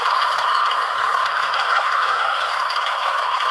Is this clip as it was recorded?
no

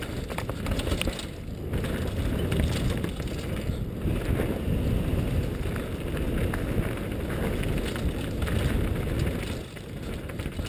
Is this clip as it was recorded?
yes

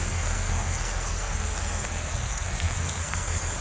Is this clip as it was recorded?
no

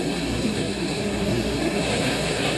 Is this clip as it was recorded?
no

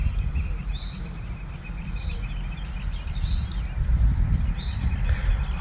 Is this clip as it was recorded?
yes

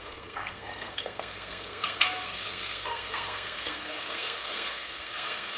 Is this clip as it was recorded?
no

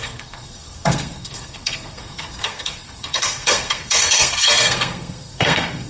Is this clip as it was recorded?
no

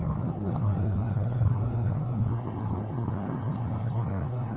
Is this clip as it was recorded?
no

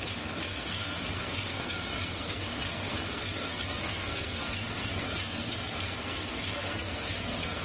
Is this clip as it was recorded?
no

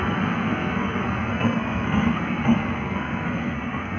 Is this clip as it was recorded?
no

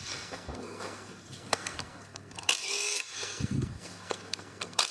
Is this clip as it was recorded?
no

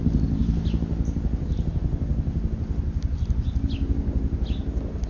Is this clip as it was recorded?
yes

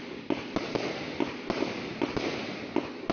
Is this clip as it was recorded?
yes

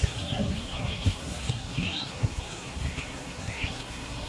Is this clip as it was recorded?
no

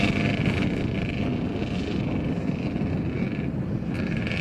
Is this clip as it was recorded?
yes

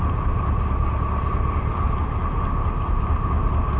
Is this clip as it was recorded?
yes